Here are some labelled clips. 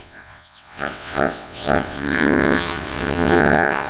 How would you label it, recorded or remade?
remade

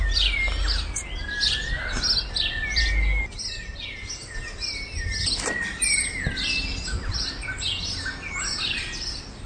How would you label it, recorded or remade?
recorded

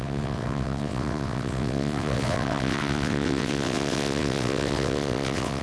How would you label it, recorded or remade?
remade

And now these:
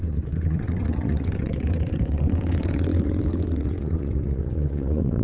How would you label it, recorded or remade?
remade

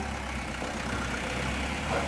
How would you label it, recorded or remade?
recorded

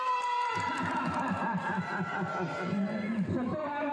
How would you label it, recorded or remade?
recorded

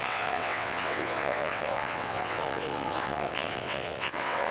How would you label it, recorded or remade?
remade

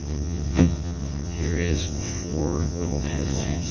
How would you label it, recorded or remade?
remade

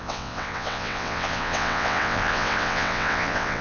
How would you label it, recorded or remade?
remade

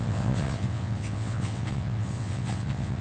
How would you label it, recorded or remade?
remade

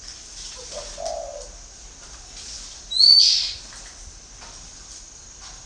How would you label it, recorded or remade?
recorded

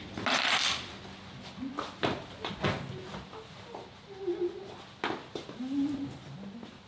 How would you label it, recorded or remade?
recorded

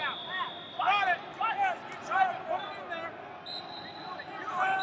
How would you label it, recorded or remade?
recorded